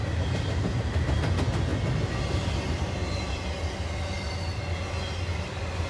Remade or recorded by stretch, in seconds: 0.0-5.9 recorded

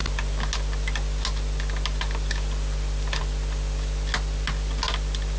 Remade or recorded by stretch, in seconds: 0.0-5.4 recorded

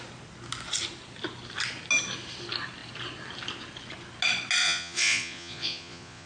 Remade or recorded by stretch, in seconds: 0.0-4.6 recorded; 4.6-6.3 remade

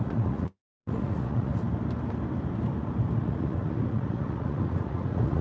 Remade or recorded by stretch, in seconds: 0.0-1.5 remade; 1.5-3.2 recorded; 3.2-5.4 remade